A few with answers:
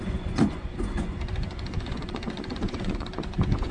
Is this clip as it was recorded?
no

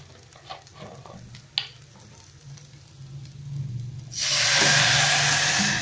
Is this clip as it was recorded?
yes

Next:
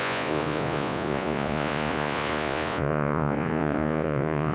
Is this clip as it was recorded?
no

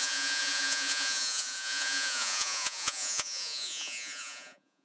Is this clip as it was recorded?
no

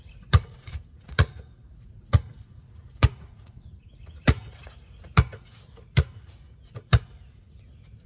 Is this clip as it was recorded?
no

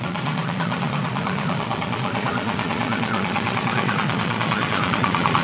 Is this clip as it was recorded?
no